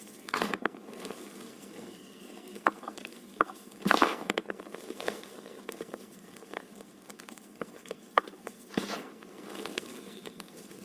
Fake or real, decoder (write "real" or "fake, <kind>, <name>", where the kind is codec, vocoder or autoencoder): fake, codec, SNAC